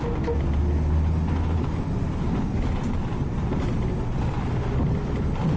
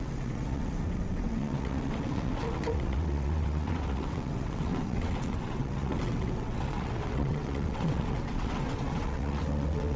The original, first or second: first